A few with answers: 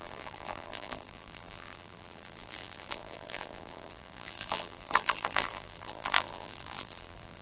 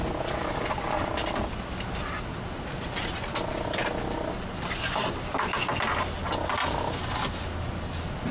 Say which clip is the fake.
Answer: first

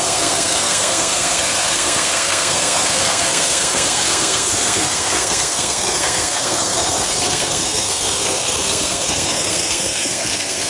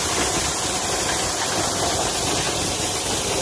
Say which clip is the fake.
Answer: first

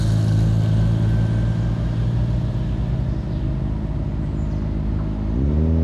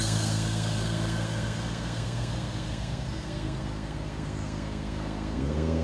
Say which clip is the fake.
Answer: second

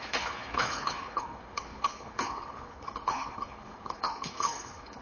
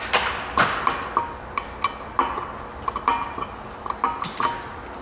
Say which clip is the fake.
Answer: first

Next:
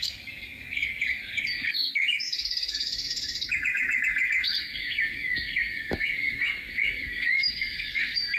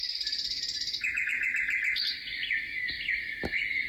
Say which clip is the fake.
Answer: first